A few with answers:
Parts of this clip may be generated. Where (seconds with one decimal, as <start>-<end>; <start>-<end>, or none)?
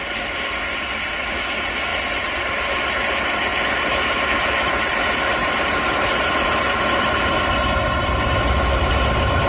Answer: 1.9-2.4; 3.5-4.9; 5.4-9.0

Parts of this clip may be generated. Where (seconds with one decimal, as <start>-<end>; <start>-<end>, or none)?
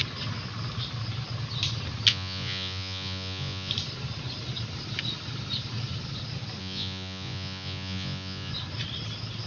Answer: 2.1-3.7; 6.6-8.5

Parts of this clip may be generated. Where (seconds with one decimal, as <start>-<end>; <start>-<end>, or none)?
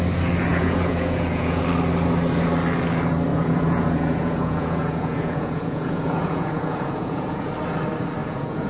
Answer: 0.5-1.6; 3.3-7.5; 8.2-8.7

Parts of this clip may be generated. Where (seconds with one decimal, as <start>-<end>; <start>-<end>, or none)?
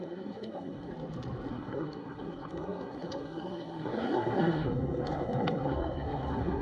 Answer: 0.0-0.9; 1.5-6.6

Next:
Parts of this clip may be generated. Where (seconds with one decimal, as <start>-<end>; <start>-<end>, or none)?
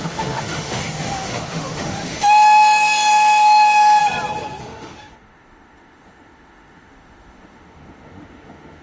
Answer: 0.0-4.0; 4.6-8.8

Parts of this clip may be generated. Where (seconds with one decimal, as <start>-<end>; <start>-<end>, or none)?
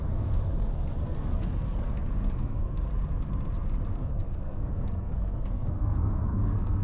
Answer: 0.0-2.9; 3.9-6.8